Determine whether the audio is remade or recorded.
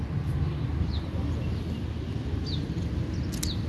recorded